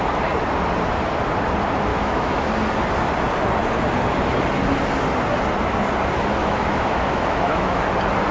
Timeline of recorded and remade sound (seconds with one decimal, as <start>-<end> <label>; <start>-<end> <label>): 0.0-1.9 recorded; 1.9-2.5 remade; 2.5-6.4 recorded; 6.4-7.8 remade; 7.8-8.3 recorded